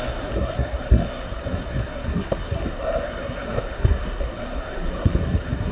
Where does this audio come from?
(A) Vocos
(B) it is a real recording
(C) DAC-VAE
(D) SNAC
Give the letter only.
D